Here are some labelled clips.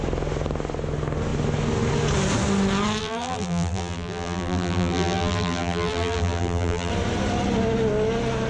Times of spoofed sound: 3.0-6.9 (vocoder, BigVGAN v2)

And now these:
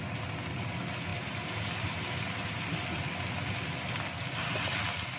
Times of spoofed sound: none

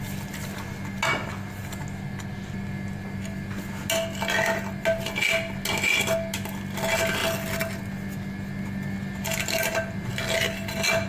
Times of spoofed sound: none

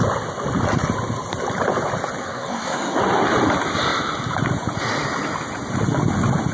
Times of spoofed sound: 2.2-3.0 (codec, SNAC)

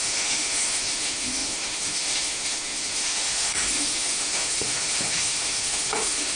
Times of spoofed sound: 0.0-6.4 (autoencoder, DAC-VAE)